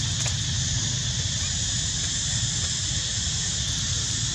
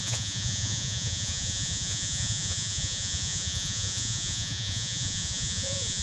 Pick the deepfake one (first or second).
second